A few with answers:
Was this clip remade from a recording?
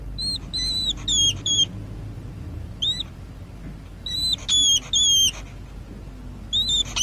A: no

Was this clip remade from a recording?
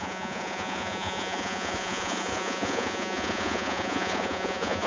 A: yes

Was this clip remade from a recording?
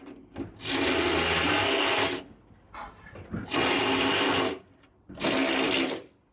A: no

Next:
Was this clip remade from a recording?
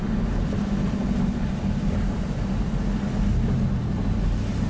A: no